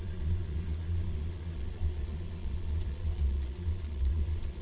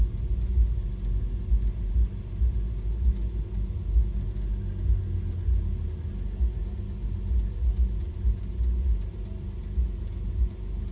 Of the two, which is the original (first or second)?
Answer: second